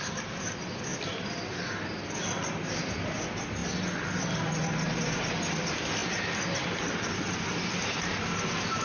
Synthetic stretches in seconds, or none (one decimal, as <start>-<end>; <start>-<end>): none